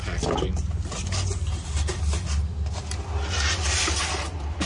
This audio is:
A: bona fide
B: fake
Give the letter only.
A